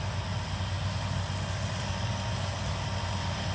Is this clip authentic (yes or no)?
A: yes